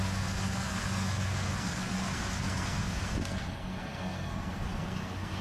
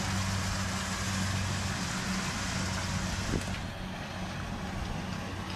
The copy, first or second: first